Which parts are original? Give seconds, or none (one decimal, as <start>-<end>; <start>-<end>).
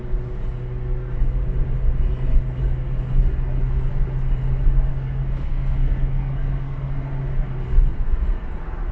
0.0-4.9; 7.0-8.9